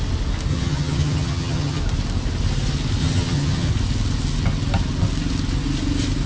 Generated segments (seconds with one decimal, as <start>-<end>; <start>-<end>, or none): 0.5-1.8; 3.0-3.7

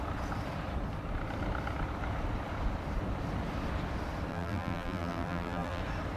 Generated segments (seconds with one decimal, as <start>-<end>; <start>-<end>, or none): 4.3-5.8

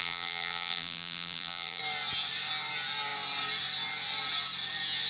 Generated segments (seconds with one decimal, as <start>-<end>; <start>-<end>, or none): 0.0-1.8

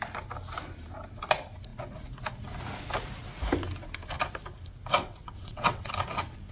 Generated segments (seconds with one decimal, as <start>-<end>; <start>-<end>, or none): 5.0-5.9